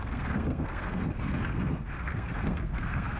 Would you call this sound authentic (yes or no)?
no